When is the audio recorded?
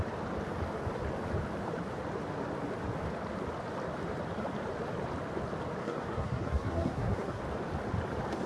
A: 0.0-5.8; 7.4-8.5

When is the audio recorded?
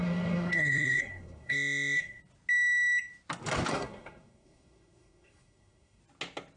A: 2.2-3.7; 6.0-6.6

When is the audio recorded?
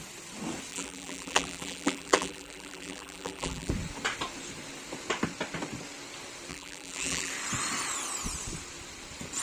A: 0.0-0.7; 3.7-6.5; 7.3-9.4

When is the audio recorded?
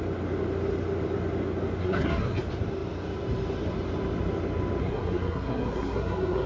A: 0.0-1.8; 2.4-4.8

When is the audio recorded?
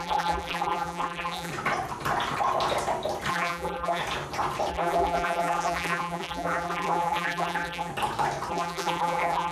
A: 1.5-3.3; 4.0-4.7; 7.9-8.5